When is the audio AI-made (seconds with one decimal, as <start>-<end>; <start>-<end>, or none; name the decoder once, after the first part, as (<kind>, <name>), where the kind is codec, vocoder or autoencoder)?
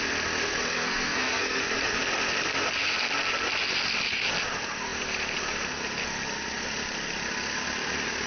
0.7-1.6 (codec, SNAC)